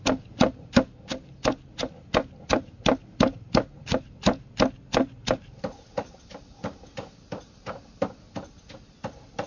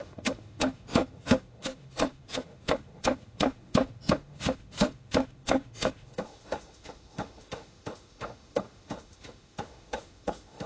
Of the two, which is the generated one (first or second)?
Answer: second